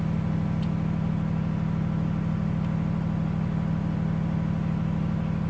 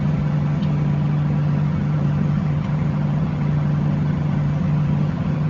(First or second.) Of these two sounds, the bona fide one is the first